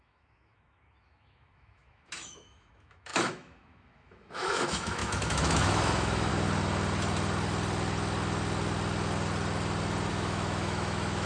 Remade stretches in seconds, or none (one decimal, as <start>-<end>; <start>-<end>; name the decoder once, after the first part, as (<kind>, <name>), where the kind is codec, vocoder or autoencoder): 0.0-6.3 (autoencoder, DAC-VAE); 10.1-11.3